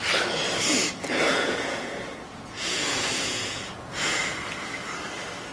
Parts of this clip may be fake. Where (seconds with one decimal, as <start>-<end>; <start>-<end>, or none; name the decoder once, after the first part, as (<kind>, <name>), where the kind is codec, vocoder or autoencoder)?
1.3-4.2 (vocoder, Vocos)

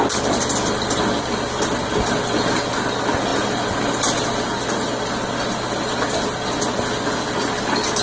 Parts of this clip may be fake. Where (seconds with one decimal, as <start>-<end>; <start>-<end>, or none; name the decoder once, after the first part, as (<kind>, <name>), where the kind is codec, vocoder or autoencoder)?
none

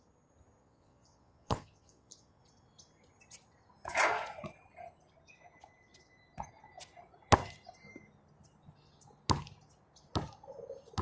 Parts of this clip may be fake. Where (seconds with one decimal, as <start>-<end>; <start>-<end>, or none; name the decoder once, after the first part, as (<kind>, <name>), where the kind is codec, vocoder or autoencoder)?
0.6-2.4 (vocoder, Vocos)

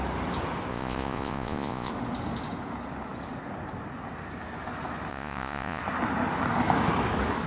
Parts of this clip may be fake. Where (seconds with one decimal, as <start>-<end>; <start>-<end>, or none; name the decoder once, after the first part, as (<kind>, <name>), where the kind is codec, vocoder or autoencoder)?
0.7-1.9 (vocoder, Vocos); 5.1-5.8